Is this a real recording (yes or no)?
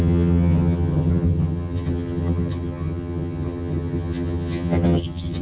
no